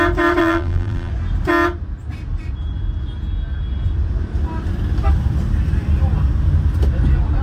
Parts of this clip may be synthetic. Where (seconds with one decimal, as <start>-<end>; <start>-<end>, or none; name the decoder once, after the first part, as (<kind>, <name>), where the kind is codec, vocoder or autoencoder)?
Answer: 0.4-1.1 (vocoder, BigVGAN v2)